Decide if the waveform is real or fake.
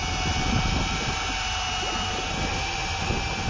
real